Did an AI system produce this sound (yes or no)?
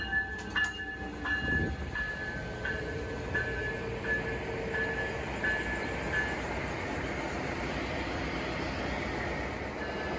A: no